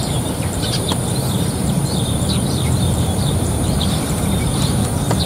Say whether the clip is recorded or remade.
remade